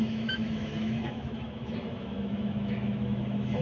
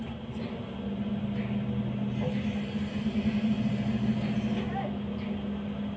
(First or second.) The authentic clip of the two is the second